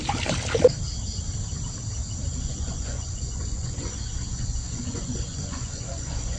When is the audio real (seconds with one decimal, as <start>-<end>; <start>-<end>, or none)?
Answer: 0.0-2.3